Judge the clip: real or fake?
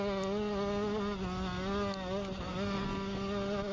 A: real